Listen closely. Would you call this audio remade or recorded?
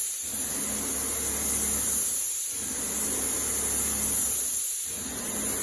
recorded